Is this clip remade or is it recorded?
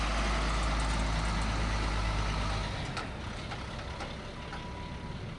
recorded